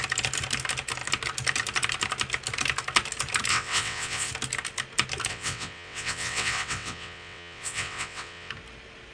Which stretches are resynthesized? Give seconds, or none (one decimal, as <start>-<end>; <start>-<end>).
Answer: 3.5-4.3; 5.3-8.5